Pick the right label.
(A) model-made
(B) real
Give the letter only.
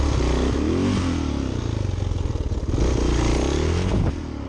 B